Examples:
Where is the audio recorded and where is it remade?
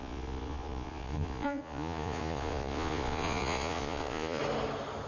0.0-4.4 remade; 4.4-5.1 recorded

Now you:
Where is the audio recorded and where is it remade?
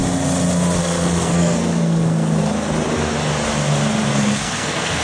0.0-0.8 recorded; 0.8-2.4 remade; 2.4-4.1 recorded; 4.1-5.0 remade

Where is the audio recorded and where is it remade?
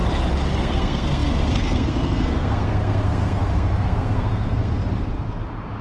0.0-0.6 recorded; 0.6-4.8 remade; 4.8-5.8 recorded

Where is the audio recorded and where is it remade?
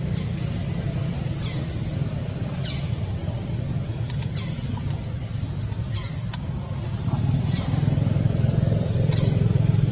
0.0-9.9 recorded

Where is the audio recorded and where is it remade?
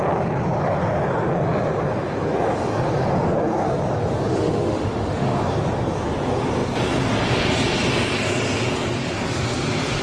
0.0-4.3 recorded; 4.3-5.4 remade; 5.4-10.0 recorded